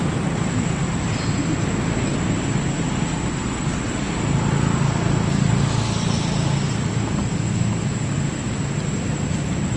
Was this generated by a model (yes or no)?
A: no